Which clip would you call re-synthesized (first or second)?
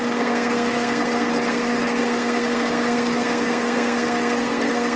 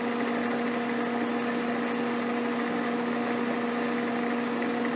first